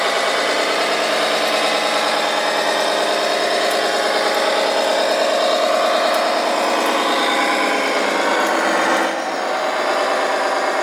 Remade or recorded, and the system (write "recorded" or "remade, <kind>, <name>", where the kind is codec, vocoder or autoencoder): recorded